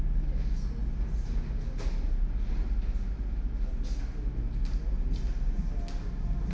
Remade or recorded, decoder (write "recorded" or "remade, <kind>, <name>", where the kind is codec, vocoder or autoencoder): recorded